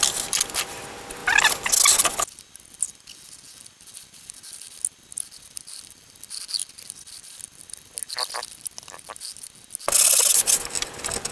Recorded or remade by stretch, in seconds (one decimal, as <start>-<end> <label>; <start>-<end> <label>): 0.0-11.3 recorded